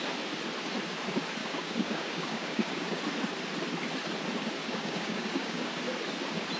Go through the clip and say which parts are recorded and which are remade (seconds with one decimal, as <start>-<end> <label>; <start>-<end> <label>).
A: 0.0-1.4 recorded; 1.4-3.0 remade; 3.0-4.6 recorded; 4.6-5.7 remade; 5.7-6.6 recorded